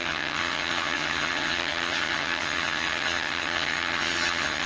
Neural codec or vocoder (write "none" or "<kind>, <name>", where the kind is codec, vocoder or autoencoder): vocoder, HiFi-GAN